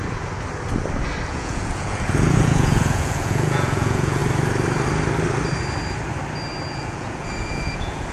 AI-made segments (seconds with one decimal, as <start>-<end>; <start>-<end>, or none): 1.3-4.2; 6.7-8.1